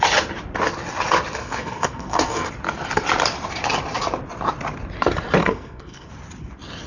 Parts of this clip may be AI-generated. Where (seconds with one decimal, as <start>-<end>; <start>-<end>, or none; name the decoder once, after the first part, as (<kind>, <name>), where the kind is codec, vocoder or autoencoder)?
1.4-2.5 (codec, SNAC); 5.4-6.1